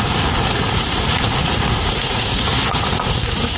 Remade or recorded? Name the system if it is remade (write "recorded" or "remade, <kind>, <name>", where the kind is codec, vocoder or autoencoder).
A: remade, vocoder, Vocos